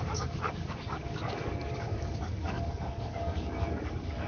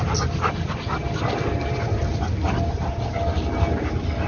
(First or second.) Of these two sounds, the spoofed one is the first